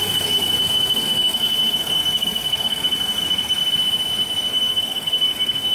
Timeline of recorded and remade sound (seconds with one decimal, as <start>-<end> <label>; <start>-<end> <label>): 0.0-3.6 remade; 3.6-4.5 recorded; 4.5-5.7 remade